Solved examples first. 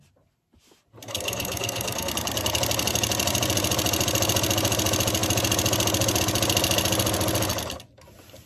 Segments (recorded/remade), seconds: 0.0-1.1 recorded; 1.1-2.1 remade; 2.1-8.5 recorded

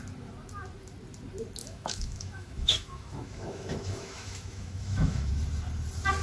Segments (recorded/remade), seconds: 0.0-1.6 recorded; 1.6-5.3 remade; 5.3-6.2 recorded

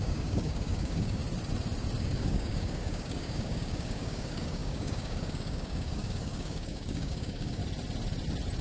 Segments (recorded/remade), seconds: 0.0-1.2 remade; 1.2-2.0 recorded; 2.0-7.6 remade; 7.6-8.6 recorded

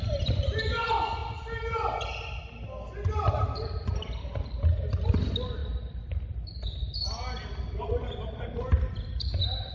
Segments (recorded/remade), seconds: 0.0-9.7 recorded

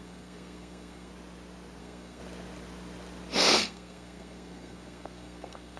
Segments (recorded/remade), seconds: 0.0-1.1 remade; 1.1-1.8 recorded; 1.8-2.2 remade; 2.2-3.4 recorded; 3.4-5.8 remade

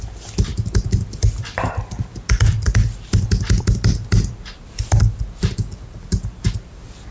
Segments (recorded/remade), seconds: 0.0-7.1 remade